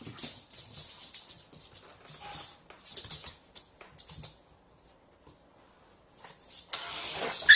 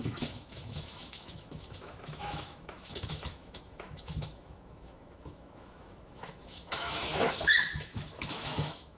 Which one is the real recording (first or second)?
first